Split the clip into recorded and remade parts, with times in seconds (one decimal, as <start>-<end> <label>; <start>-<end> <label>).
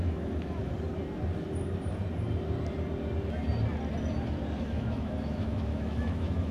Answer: 0.0-0.7 remade; 0.7-4.6 recorded; 4.6-6.5 remade